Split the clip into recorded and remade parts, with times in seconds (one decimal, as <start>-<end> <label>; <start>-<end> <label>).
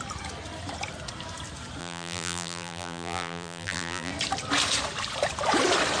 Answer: 0.0-1.8 recorded; 1.8-4.1 remade; 4.1-6.0 recorded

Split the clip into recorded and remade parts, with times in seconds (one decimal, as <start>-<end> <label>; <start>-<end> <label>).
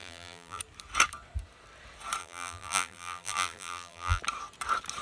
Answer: 0.0-0.6 remade; 0.6-2.2 recorded; 2.2-4.2 remade; 4.2-5.0 recorded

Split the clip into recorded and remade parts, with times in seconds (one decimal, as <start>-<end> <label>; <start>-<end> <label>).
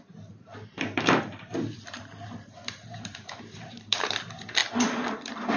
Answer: 0.0-0.7 recorded; 0.7-4.1 remade; 4.1-5.6 recorded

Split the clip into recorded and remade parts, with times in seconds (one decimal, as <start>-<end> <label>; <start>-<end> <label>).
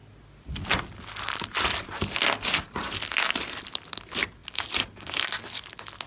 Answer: 0.0-4.4 recorded; 4.4-5.3 remade; 5.3-6.1 recorded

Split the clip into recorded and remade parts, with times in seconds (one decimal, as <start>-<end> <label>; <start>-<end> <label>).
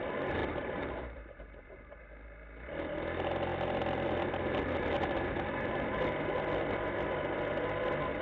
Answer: 0.0-0.4 recorded; 0.4-2.0 remade; 2.0-8.2 recorded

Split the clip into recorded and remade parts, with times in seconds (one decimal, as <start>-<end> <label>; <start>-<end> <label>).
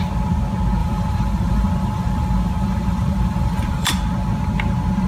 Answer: 0.0-0.8 recorded; 0.8-3.9 remade; 3.9-5.1 recorded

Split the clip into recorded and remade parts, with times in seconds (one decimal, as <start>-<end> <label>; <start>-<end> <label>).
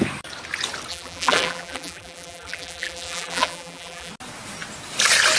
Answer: 0.0-0.9 recorded; 0.9-4.1 remade; 4.1-5.4 recorded